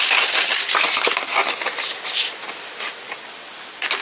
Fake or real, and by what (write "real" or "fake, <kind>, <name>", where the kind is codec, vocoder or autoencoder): real